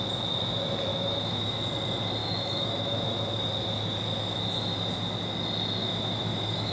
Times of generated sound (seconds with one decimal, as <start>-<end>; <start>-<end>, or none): 0.9-1.6; 2.2-3.5; 5.8-6.7